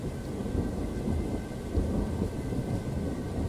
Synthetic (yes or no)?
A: no